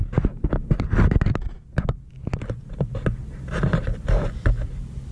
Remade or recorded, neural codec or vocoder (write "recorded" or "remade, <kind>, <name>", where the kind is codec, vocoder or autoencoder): recorded